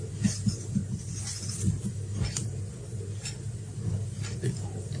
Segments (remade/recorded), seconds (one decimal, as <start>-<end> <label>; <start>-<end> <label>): 0.0-5.0 recorded